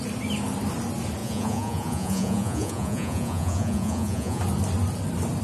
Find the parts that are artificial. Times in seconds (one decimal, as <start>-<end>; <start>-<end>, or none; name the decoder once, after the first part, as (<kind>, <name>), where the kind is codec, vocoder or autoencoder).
1.2-4.4 (vocoder, Vocos)